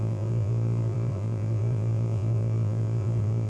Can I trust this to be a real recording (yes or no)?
no